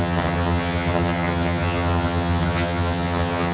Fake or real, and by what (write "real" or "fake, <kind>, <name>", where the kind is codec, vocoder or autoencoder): fake, vocoder, HiFi-GAN